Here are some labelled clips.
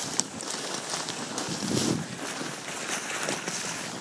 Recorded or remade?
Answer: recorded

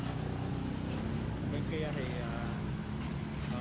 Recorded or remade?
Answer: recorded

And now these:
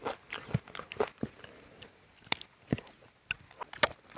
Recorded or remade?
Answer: recorded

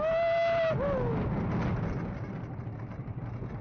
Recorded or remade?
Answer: recorded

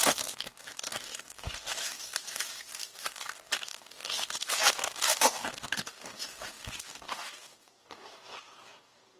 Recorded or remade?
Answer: remade